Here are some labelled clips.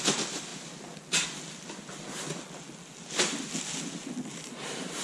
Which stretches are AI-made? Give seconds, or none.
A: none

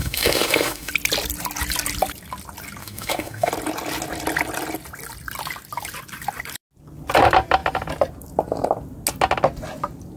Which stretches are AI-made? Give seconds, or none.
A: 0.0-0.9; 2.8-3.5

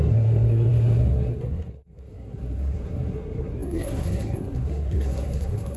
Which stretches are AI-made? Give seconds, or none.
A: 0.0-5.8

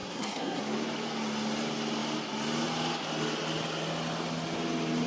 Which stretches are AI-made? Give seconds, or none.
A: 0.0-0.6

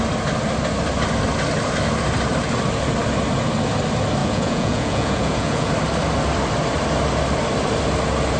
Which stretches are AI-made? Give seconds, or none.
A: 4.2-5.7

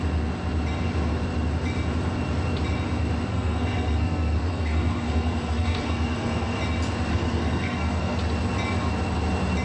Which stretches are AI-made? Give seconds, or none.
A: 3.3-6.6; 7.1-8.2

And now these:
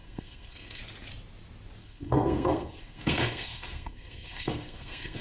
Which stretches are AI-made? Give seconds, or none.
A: 0.0-0.8; 1.8-5.2